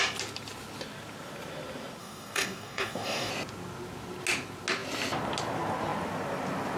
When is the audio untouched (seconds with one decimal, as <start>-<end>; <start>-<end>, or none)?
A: 0.0-2.0; 3.3-6.8